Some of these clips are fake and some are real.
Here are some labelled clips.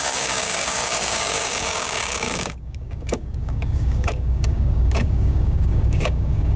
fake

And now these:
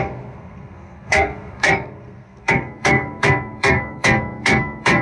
fake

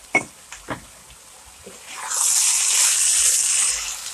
real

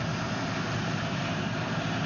fake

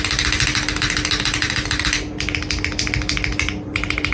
real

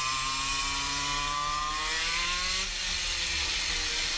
real